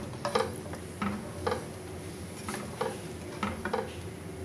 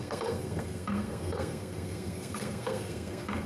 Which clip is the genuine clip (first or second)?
first